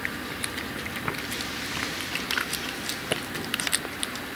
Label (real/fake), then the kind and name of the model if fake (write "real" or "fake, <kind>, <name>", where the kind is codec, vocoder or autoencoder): real